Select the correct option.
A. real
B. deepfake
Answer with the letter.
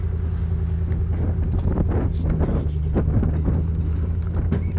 A